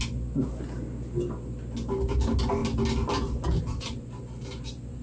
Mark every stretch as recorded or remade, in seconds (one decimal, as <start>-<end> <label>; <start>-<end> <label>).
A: 0.0-5.0 recorded